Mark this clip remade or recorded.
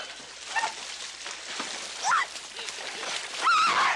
recorded